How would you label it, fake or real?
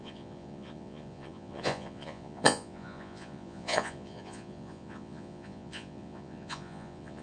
fake